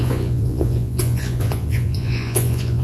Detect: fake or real fake